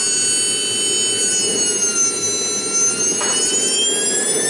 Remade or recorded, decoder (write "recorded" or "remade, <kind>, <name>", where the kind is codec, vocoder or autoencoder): recorded